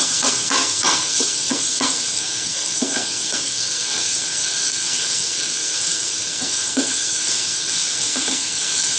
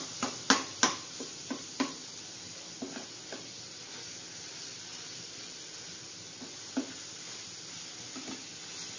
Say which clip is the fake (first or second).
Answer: first